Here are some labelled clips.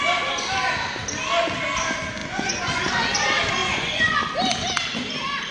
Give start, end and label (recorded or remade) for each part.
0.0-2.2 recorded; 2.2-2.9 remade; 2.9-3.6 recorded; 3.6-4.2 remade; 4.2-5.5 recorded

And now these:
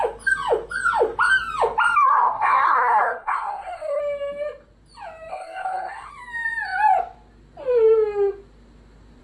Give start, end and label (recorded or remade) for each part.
0.0-2.1 recorded; 2.1-4.0 remade; 4.0-5.3 recorded; 5.3-6.1 remade; 6.1-9.2 recorded

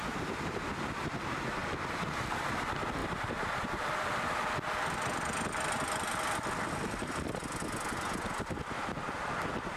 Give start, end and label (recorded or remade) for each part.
0.0-3.0 recorded; 3.0-4.3 remade; 4.3-9.8 recorded

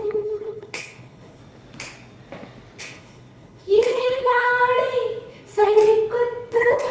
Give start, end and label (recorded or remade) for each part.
0.0-1.4 remade; 1.4-2.8 recorded; 2.8-4.5 remade; 4.5-5.3 recorded; 5.3-5.8 remade; 5.8-6.5 recorded; 6.5-6.9 remade